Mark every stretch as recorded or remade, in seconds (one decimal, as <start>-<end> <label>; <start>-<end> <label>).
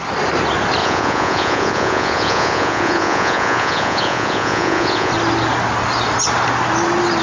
0.0-0.8 recorded; 0.8-5.1 remade; 5.1-7.2 recorded